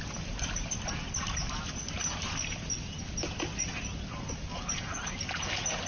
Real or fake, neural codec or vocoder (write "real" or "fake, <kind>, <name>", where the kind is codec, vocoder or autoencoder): real